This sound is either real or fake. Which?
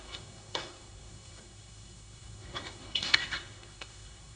fake